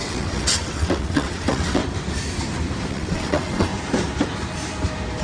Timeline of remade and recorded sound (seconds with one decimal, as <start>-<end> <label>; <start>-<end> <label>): 0.0-1.8 remade; 1.8-2.9 recorded; 2.9-3.7 remade; 3.7-5.2 recorded